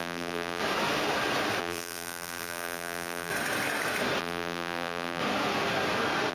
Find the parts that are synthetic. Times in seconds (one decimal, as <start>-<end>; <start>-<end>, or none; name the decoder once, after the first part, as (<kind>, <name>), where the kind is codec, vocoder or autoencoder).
0.0-0.6 (vocoder, BigVGAN v2); 1.6-3.3; 4.2-5.2